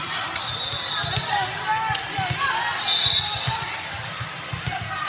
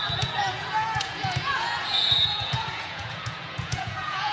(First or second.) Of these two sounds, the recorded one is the first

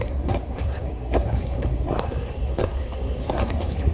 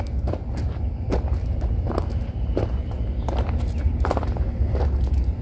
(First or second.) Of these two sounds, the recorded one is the second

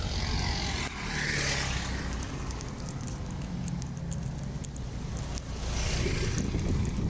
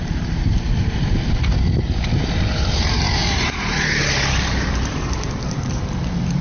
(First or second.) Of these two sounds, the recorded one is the first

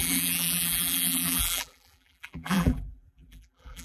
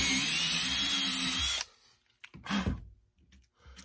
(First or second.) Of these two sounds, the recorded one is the second